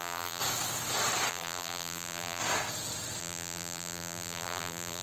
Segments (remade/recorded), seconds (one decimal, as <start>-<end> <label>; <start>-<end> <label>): 0.0-0.4 remade; 0.4-1.3 recorded; 1.3-2.4 remade; 2.4-3.2 recorded; 3.2-5.0 remade